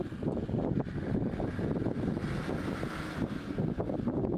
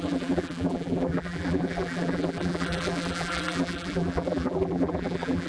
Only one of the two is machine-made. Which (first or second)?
second